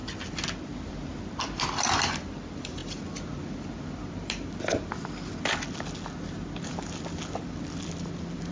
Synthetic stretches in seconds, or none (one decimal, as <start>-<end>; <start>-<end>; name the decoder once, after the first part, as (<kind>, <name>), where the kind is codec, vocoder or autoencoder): none